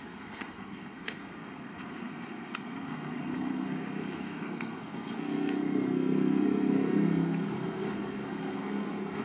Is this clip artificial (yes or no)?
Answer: yes